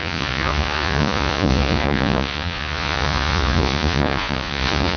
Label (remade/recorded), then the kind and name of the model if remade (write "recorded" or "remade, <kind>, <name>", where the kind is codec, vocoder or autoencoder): remade, vocoder, Vocos